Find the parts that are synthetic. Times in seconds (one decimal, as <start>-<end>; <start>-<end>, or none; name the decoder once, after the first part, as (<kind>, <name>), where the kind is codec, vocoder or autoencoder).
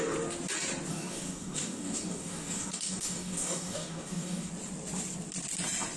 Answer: 0.9-4.5 (codec, DAC)